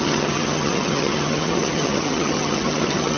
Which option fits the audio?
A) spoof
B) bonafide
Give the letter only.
A